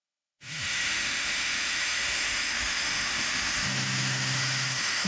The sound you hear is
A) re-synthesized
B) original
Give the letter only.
A